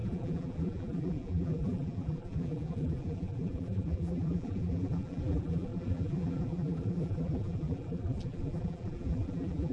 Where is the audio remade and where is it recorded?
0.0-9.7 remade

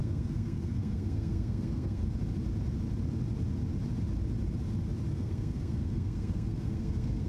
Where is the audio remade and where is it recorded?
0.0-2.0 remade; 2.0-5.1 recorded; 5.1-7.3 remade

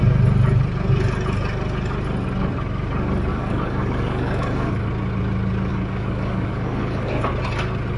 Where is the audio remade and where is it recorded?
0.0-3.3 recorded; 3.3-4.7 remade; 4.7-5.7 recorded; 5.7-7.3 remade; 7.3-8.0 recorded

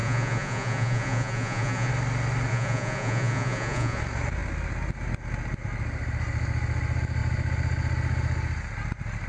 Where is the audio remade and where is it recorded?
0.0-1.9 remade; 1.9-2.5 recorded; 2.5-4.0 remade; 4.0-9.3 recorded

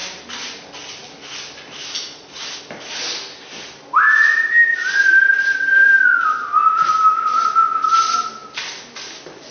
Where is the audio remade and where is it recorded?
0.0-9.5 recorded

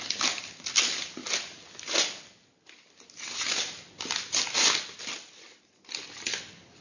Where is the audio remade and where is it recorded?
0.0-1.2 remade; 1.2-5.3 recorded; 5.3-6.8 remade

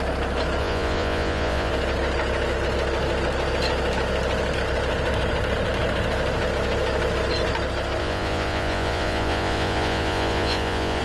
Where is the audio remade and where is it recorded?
0.0-0.6 recorded; 0.6-1.7 remade; 1.7-8.0 recorded; 8.0-11.0 remade